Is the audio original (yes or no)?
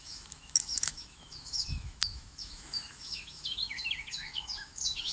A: no